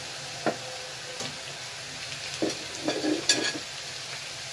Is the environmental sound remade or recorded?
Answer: recorded